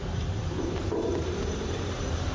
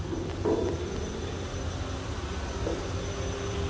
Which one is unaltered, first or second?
second